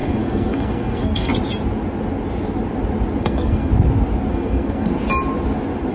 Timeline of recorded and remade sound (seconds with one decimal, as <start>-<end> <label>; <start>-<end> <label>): 0.0-1.3 remade; 1.3-3.2 recorded; 3.2-3.7 remade; 3.7-4.3 recorded; 4.3-4.9 remade; 4.9-5.9 recorded